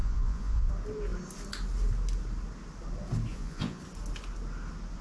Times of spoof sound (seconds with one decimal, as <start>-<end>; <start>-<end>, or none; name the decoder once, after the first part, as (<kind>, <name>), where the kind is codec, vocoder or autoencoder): 0.0-0.7 (vocoder, Vocos); 3.3-3.8